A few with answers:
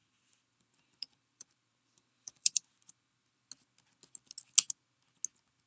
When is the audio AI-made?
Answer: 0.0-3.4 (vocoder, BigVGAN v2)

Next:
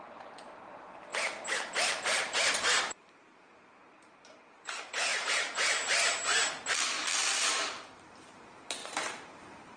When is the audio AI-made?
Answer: 0.0-1.1 (vocoder, BigVGAN v2); 2.0-5.1; 7.6-9.8